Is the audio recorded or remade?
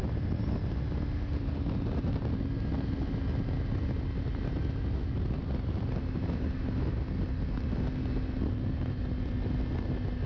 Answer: recorded